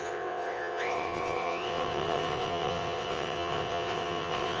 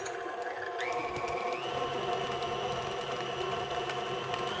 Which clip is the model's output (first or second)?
first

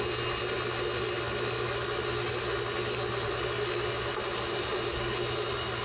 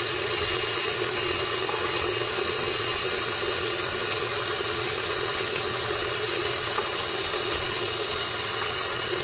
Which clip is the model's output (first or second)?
second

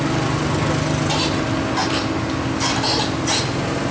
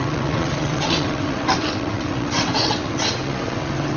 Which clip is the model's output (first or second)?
second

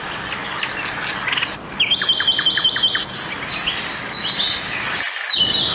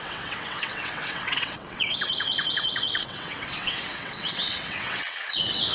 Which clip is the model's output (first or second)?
second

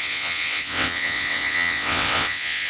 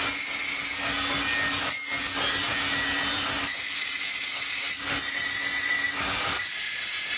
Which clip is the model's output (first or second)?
first